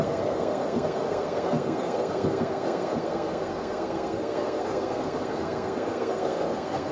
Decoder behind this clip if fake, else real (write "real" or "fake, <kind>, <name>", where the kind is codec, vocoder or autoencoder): fake, codec, SNAC